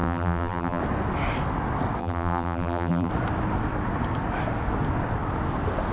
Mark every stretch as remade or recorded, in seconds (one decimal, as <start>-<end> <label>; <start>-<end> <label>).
0.0-0.8 remade; 0.8-2.0 recorded; 2.0-3.1 remade; 3.1-5.9 recorded